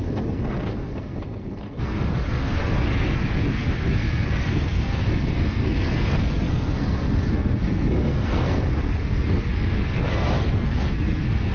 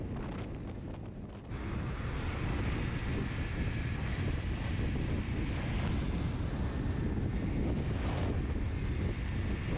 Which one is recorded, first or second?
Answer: second